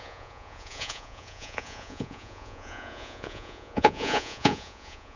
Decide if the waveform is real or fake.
fake